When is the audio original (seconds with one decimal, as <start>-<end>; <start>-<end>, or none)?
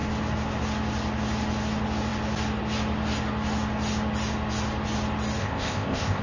0.0-5.4